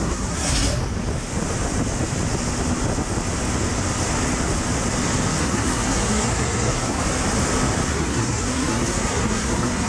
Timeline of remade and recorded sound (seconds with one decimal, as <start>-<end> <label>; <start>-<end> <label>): 0.0-0.8 remade; 0.8-5.4 recorded; 5.4-7.0 remade; 7.0-7.9 recorded; 7.9-9.9 remade